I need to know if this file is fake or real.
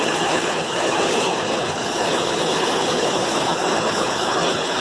fake